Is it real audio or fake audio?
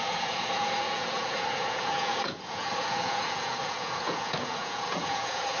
fake